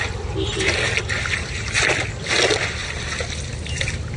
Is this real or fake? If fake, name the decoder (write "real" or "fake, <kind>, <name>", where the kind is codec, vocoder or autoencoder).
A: real